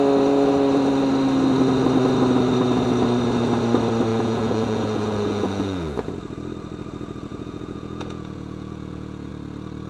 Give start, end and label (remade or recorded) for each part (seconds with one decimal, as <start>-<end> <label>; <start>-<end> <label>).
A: 0.0-4.1 recorded; 4.1-6.1 remade; 6.1-7.3 recorded; 7.3-9.3 remade; 9.3-9.9 recorded